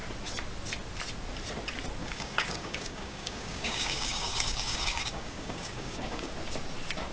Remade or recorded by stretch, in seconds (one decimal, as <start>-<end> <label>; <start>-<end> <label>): 0.0-2.0 recorded; 2.0-6.3 remade; 6.3-7.1 recorded